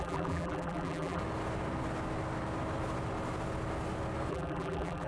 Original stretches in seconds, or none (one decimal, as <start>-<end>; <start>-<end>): 1.2-4.3